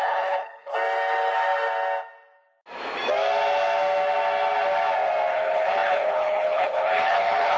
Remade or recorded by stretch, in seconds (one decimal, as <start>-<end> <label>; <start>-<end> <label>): 0.0-0.7 remade; 0.7-5.3 recorded; 5.3-7.6 remade